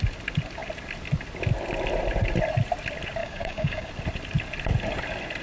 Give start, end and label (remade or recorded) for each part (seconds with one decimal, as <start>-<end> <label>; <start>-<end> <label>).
0.0-3.2 recorded; 3.2-3.9 remade; 3.9-5.4 recorded